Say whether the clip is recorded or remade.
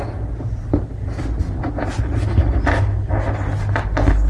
recorded